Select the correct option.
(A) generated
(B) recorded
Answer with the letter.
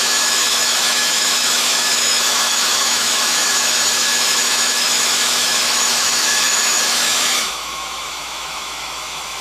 A